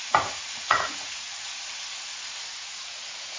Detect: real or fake fake